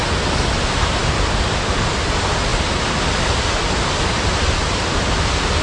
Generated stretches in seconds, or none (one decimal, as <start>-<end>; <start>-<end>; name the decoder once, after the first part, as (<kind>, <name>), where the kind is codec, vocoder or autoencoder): none